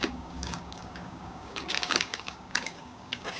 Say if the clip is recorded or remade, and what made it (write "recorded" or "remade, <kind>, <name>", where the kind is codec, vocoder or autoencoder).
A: remade, codec, DAC